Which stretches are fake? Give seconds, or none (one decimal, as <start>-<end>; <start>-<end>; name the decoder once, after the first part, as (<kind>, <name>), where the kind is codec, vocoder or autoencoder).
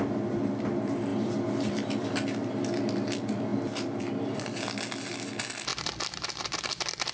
1.1-2.1 (vocoder, BigVGAN v2); 3.5-4.0; 5.7-6.6